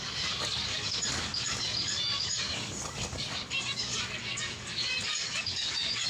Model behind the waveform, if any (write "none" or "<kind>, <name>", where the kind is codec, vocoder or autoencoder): codec, DAC